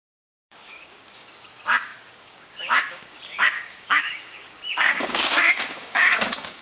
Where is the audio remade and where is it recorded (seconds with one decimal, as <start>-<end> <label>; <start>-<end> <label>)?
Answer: 0.0-6.6 remade